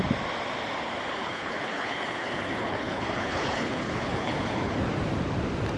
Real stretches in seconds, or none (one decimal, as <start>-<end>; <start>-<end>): 0.0-1.2; 4.7-5.8